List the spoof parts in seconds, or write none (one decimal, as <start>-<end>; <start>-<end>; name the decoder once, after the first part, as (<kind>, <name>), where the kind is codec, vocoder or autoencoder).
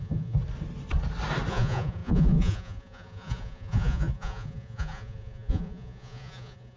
0.0-0.4 (vocoder, Vocos); 1.5-6.8